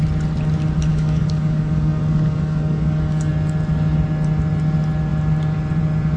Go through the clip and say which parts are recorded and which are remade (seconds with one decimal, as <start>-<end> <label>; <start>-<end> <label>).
0.0-0.9 recorded; 0.9-3.3 remade; 3.3-6.2 recorded